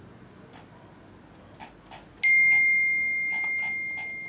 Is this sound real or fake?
real